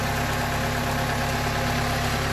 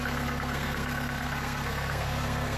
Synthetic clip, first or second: second